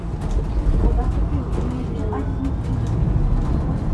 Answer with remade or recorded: recorded